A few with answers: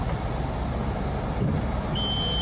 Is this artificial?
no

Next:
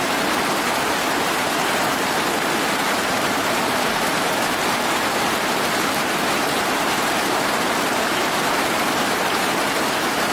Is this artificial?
yes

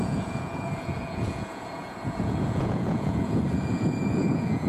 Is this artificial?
yes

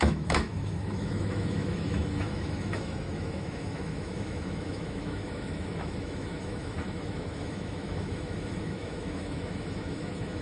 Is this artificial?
yes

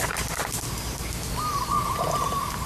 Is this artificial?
no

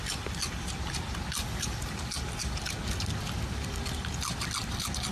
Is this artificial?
no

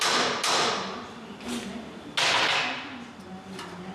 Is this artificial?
no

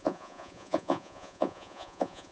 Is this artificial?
yes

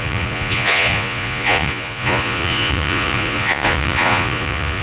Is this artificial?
yes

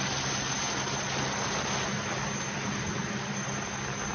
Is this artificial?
no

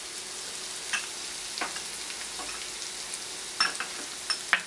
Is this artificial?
no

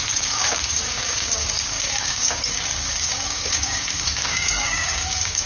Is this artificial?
yes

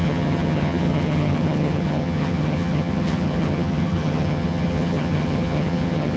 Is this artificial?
yes